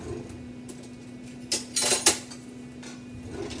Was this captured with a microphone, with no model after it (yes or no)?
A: yes